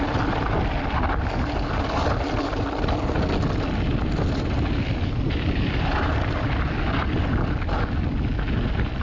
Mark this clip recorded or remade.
recorded